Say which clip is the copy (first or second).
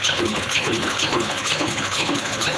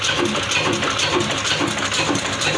first